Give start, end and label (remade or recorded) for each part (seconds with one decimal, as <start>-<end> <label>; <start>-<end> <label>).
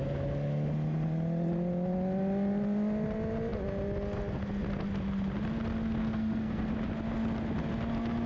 0.0-6.0 recorded; 6.0-6.7 remade; 6.7-8.3 recorded